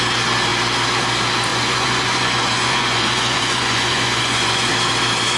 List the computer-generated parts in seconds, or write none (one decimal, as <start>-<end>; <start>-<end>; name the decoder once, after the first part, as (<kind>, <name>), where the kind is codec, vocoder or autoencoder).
1.5-4.7 (vocoder, Vocos)